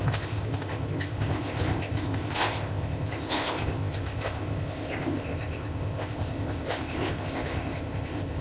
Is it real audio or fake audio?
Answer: fake